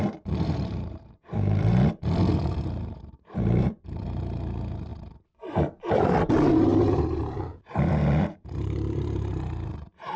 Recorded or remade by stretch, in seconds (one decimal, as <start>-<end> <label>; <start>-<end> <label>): 0.0-10.2 remade

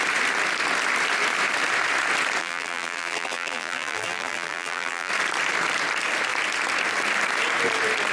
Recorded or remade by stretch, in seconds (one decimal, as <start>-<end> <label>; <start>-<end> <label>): 0.0-2.4 recorded; 2.4-5.1 remade; 5.1-8.1 recorded

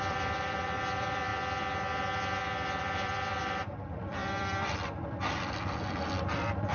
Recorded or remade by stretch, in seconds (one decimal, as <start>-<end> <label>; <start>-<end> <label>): 0.0-1.3 remade; 1.3-2.8 recorded; 2.8-6.7 remade